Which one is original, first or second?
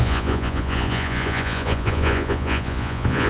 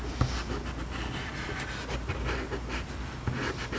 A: second